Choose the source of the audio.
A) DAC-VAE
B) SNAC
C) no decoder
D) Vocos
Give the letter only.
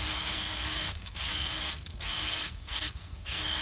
B